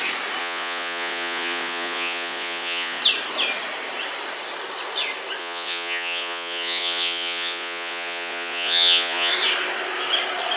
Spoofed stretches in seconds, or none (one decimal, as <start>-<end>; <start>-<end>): 0.4-3.0; 5.4-9.3

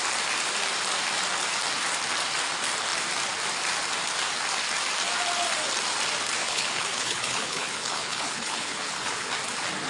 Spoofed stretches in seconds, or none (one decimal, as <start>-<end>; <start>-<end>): 6.4-9.3

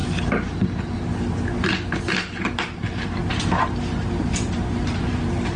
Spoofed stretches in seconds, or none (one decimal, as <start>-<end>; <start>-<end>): none

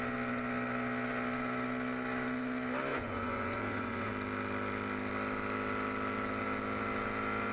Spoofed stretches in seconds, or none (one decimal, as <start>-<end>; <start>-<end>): 2.9-4.1

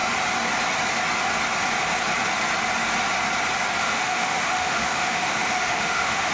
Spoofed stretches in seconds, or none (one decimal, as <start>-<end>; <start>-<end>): 3.8-6.3

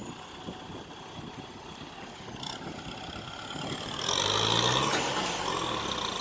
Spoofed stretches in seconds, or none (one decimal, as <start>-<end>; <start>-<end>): none

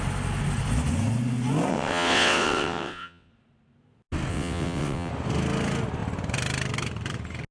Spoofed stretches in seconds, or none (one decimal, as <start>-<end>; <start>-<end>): 1.7-3.3; 4.3-5.1

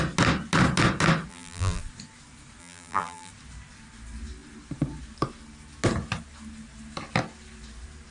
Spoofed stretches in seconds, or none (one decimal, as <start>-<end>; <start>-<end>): 1.3-1.8; 2.6-3.3